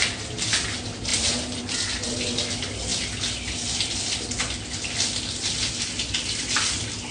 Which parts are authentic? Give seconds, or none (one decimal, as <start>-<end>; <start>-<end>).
0.0-7.1